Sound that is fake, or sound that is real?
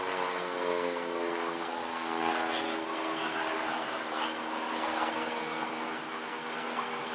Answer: fake